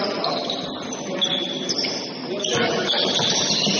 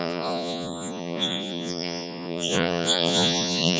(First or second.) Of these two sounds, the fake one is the second